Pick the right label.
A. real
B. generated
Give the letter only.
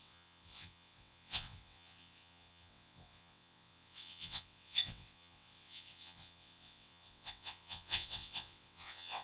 B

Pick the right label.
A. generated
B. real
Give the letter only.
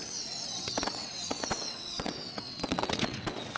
A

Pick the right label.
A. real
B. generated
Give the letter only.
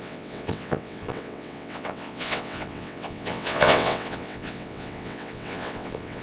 B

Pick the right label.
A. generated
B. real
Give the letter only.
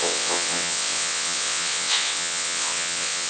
A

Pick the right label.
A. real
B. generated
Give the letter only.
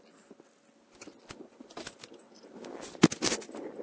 A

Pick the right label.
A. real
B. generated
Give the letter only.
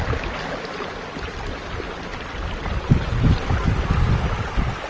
A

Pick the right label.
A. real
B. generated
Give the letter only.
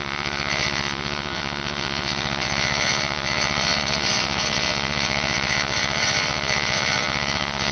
B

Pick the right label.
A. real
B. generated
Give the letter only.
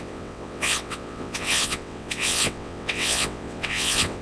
B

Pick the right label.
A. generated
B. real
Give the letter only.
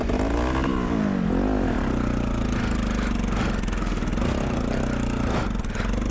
B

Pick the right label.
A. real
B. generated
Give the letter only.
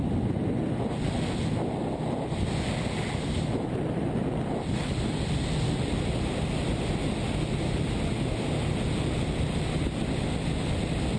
A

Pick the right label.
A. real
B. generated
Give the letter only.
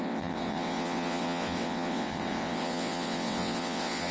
B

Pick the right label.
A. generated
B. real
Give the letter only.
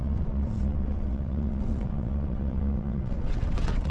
A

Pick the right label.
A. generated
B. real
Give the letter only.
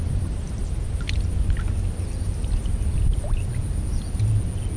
B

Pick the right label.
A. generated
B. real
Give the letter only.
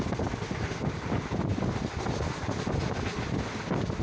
B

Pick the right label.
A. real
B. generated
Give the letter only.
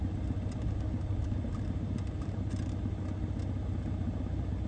A